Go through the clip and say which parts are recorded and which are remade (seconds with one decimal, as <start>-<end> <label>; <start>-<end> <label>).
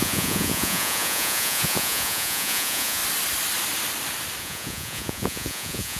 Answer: 0.0-3.0 remade; 3.0-4.4 recorded; 4.4-6.0 remade